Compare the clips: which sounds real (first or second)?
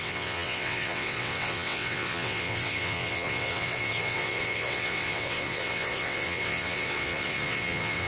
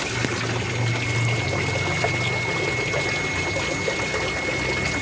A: second